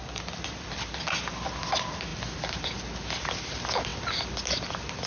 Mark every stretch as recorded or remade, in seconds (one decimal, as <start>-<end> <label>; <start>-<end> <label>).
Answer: 0.0-5.1 recorded